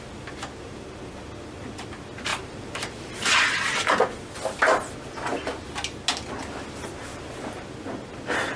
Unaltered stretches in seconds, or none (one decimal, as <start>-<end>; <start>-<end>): 0.0-2.3; 3.3-7.1; 7.7-8.6